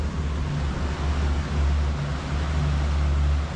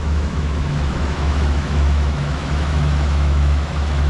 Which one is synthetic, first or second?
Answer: second